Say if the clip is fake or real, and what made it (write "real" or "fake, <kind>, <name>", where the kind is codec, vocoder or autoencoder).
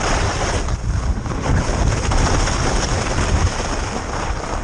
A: real